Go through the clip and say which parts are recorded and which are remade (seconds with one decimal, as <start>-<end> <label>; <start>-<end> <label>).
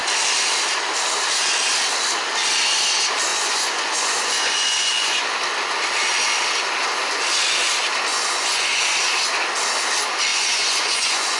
0.0-3.3 recorded; 3.3-5.4 remade; 5.4-8.1 recorded; 8.1-8.8 remade; 8.8-10.3 recorded; 10.3-11.4 remade